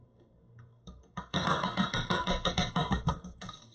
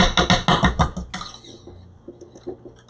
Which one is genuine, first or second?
second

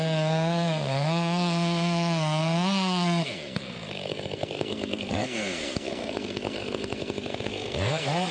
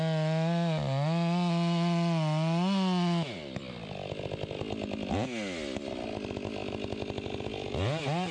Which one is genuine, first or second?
second